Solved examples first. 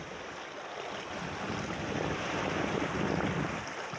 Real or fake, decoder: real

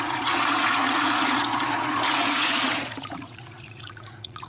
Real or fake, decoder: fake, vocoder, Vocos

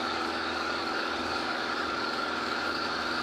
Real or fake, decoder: fake, codec, DAC